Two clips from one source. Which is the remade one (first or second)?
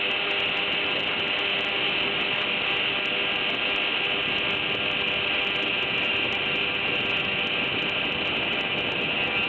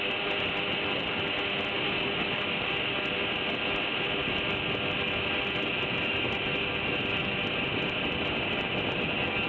second